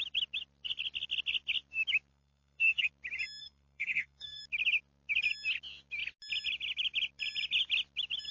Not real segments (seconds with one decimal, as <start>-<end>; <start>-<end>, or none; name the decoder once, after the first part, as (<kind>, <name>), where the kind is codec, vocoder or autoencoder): 2.1-2.9 (codec, SNAC); 3.4-4.4